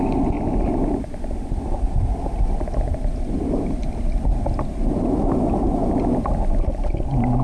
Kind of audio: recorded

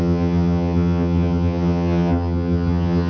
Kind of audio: remade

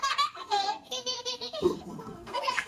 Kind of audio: remade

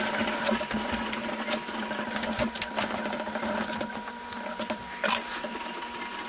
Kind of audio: recorded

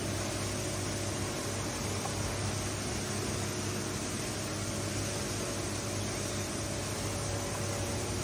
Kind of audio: recorded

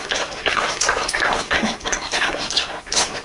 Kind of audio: remade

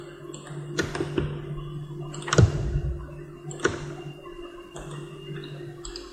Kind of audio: recorded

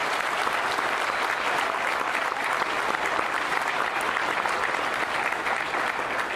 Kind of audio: recorded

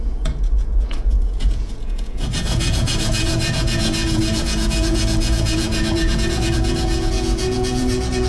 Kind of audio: remade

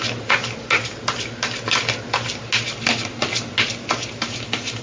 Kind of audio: recorded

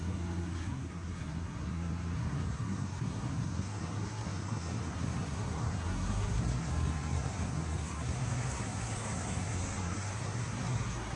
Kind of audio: remade